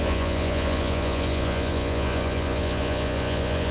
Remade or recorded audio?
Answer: remade